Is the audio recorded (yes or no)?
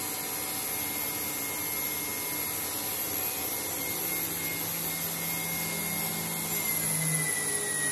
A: yes